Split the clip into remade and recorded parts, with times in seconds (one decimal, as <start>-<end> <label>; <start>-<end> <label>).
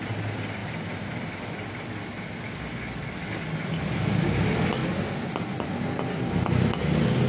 0.0-7.3 recorded